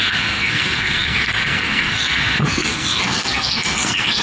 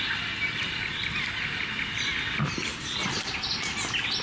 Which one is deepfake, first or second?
first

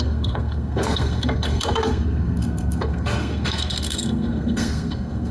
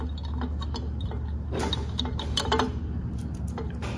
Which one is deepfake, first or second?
first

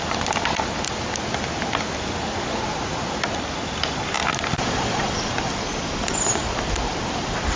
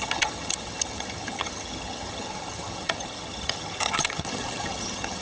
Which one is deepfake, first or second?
second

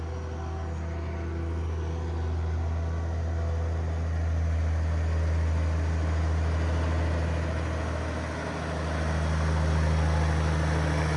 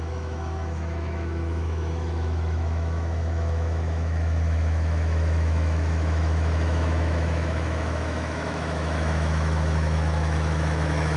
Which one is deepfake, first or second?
second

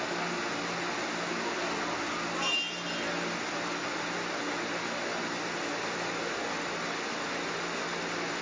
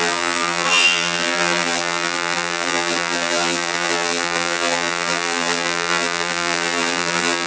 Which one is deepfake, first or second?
second